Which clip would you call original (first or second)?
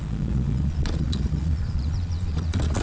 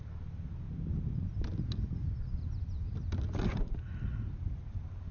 second